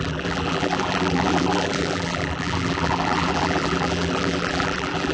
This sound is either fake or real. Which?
fake